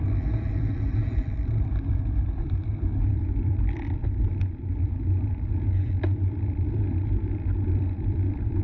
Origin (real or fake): fake